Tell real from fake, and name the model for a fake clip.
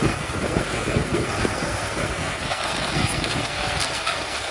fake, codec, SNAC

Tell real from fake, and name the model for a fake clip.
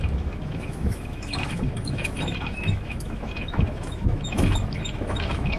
fake, autoencoder, DAC-VAE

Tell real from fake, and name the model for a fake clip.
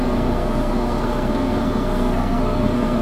fake, codec, SNAC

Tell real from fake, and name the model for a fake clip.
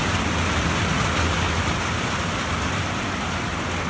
real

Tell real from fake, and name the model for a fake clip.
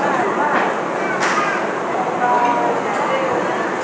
real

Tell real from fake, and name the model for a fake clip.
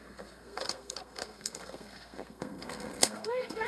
fake, codec, SNAC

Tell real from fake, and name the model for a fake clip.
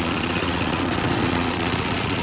fake, vocoder, Vocos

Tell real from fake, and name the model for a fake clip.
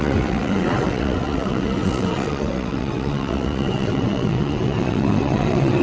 fake, vocoder, WaveNeXt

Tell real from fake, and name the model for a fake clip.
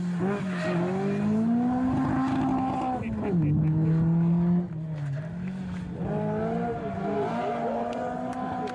real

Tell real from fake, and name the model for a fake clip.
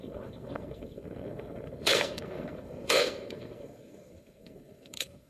fake, codec, SNAC